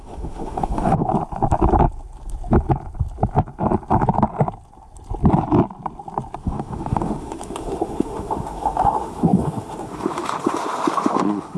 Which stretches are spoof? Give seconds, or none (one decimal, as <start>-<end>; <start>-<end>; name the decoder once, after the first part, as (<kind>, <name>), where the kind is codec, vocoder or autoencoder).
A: 0.0-1.1 (autoencoder, DAC-VAE); 6.4-11.6